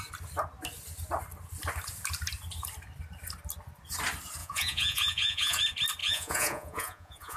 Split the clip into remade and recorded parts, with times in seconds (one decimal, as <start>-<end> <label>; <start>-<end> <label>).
0.0-4.4 recorded; 4.4-5.6 remade; 5.6-6.0 recorded; 6.0-7.4 remade